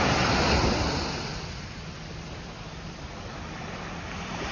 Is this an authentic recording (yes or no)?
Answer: yes